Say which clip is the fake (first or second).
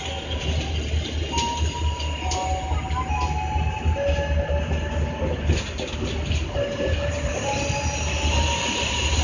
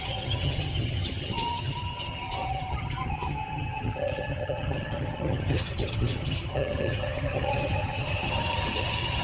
second